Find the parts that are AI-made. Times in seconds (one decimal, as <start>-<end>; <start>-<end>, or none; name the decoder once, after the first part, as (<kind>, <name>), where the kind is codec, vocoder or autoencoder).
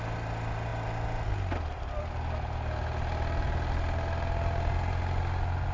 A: none